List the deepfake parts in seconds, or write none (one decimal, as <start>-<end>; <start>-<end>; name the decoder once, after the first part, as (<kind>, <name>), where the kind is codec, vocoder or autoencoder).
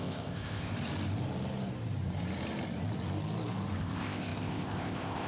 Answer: 0.0-0.7 (codec, ZipCodec); 3.8-5.3